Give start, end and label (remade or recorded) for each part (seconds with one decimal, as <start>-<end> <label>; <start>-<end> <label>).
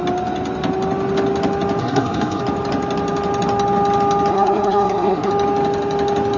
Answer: 0.0-1.8 recorded; 1.8-2.4 remade; 2.4-4.3 recorded; 4.3-5.3 remade; 5.3-6.4 recorded